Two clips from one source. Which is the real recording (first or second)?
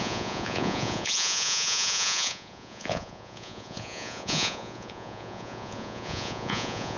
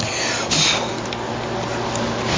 second